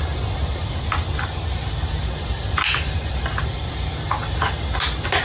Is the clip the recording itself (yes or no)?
yes